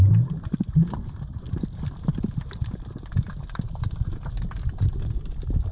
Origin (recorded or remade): recorded